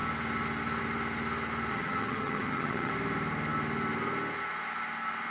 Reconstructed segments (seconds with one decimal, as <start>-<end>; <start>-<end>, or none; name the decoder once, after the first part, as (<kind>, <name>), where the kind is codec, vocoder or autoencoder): 1.7-2.9 (vocoder, HiFi-GAN)

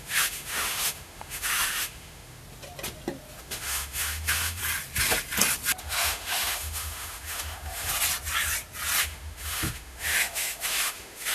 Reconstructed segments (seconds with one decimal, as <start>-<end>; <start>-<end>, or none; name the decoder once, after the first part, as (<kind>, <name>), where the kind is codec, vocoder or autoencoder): 0.0-2.4 (autoencoder, DAC-VAE); 3.4-4.6; 5.8-7.9; 9.0-11.3

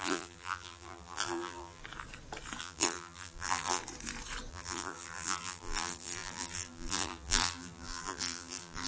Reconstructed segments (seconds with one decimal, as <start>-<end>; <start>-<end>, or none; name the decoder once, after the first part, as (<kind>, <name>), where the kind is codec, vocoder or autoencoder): 0.0-1.8 (vocoder, BigVGAN v2); 2.6-3.8; 4.5-8.9

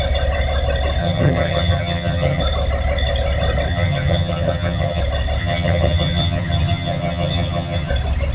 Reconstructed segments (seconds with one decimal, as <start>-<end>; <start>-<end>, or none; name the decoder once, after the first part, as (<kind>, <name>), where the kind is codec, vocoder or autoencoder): 1.0-2.4 (vocoder, HiFi-GAN); 3.7-5.0; 5.4-7.9

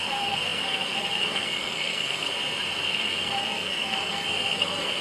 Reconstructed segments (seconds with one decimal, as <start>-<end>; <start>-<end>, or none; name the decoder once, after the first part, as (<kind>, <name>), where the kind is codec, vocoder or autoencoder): 0.0-2.3 (codec, SNAC); 2.8-5.0

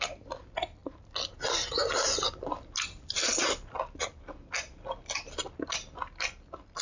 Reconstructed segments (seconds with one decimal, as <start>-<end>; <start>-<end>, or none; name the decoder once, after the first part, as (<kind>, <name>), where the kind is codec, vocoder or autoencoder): none

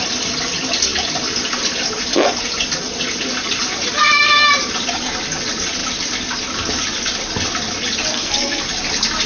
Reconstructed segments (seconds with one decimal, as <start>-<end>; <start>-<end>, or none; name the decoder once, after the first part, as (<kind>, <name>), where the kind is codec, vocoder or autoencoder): 8.1-8.6 (codec, SNAC)

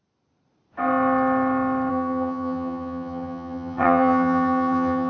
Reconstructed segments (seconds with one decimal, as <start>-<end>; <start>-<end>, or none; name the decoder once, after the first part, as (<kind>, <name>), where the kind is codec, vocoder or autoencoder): 1.9-5.1 (vocoder, HiFi-GAN)